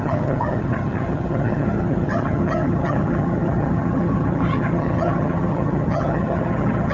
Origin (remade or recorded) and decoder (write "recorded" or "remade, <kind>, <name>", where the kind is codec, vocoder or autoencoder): remade, vocoder, HiFi-GAN